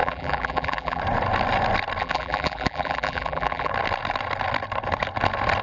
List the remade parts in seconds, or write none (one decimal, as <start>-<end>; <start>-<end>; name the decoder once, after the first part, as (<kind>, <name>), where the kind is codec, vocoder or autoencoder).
0.0-1.0 (vocoder, BigVGAN v2); 2.0-3.7